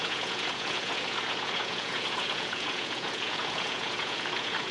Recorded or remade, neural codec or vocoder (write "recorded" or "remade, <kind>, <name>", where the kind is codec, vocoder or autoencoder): remade, vocoder, Vocos